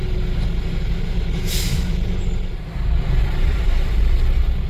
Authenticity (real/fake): real